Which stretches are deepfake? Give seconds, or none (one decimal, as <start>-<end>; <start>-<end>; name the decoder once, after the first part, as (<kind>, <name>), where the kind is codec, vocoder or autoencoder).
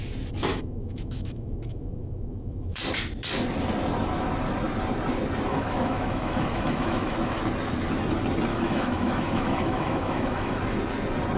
0.5-2.8 (autoencoder, DAC-VAE); 5.5-7.4; 8.5-10.6